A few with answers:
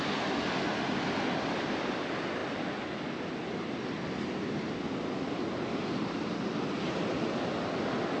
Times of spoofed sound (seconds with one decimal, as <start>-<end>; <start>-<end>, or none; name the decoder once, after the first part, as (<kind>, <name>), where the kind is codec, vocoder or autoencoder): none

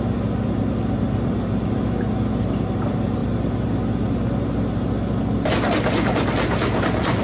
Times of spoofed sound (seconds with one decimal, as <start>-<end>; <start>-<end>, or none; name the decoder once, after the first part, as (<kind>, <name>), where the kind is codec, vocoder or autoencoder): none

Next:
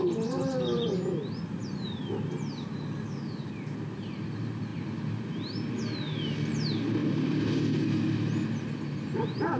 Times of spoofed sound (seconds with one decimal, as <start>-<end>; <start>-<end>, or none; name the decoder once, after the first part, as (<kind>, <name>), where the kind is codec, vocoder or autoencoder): none

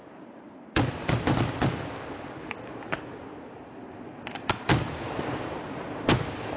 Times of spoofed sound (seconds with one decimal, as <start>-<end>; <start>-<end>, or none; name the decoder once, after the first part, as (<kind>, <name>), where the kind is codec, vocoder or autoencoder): 0.0-1.2 (vocoder, BigVGAN v2); 2.4-6.6

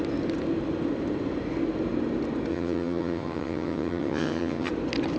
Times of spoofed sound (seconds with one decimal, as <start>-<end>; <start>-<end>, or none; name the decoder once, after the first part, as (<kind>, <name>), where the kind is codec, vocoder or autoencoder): 2.5-4.7 (vocoder, HiFi-GAN)